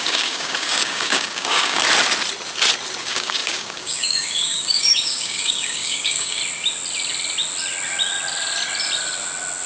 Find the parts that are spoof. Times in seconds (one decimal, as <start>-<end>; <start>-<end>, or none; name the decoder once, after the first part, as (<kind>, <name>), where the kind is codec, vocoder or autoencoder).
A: 0.0-1.8 (codec, DAC); 3.0-6.4